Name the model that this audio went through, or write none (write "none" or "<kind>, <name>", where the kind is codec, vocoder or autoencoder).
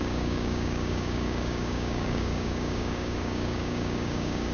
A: codec, DAC